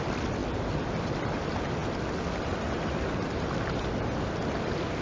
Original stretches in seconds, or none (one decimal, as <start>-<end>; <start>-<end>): 0.0-5.0